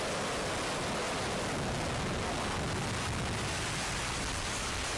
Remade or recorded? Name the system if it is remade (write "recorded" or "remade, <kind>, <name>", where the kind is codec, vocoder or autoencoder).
recorded